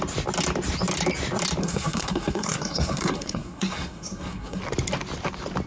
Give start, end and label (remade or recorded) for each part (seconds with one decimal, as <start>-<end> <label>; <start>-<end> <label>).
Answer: 0.0-1.6 recorded; 1.6-4.6 remade; 4.6-5.7 recorded